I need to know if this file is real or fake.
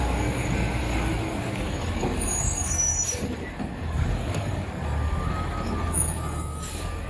fake